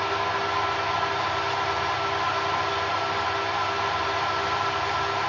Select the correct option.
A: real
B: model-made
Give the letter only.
A